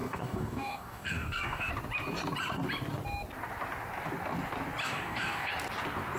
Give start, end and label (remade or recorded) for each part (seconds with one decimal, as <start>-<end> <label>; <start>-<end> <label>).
0.0-1.7 remade; 1.7-4.8 recorded; 4.8-5.5 remade; 5.5-6.2 recorded